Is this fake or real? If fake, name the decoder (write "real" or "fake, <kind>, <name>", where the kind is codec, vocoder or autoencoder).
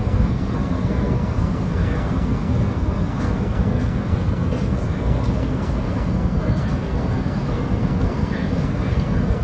fake, codec, SNAC